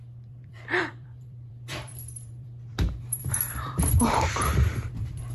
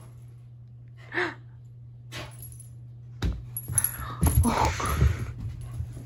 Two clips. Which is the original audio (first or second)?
second